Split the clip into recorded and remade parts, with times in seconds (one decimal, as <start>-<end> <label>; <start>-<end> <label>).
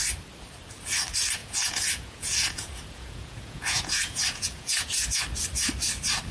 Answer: 0.0-1.4 recorded; 1.4-5.2 remade; 5.2-6.3 recorded